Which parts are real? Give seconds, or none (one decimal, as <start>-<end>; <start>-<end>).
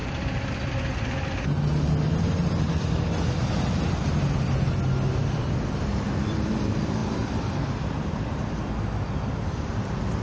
0.7-5.2; 6.5-7.0; 7.9-10.2